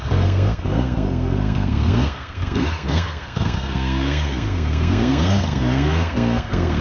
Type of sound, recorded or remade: remade